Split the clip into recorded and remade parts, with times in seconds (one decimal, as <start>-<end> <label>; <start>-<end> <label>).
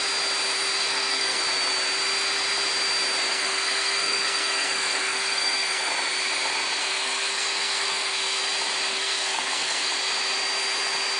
0.0-0.8 recorded; 0.8-1.4 remade; 1.4-3.3 recorded; 3.3-5.9 remade; 5.9-6.8 recorded; 6.8-8.4 remade; 8.4-8.9 recorded; 8.9-9.9 remade; 9.9-11.2 recorded